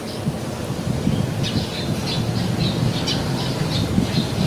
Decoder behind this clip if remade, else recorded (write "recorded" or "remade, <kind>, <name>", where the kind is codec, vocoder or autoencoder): recorded